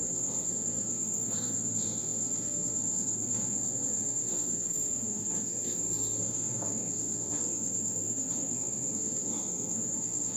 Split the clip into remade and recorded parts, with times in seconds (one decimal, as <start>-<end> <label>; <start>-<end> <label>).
0.0-10.4 remade

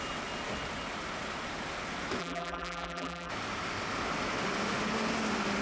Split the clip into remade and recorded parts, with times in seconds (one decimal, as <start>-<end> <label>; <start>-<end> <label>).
0.0-2.2 recorded; 2.2-3.3 remade; 3.3-5.6 recorded

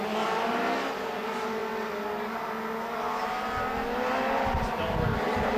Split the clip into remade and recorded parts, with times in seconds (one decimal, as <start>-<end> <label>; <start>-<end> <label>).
0.0-5.6 recorded

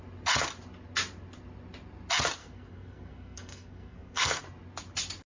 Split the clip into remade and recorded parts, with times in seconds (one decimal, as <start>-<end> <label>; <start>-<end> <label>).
0.0-2.4 recorded; 2.4-4.4 remade; 4.4-5.4 recorded